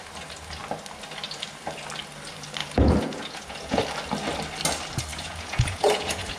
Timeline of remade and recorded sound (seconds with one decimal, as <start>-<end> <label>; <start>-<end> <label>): 0.0-2.6 recorded; 2.6-3.8 remade; 3.8-5.1 recorded; 5.1-6.4 remade